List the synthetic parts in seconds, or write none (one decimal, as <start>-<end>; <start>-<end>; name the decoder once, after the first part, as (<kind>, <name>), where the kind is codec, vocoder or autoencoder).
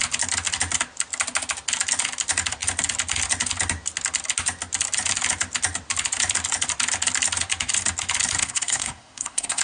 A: 8.4-9.6 (codec, SNAC)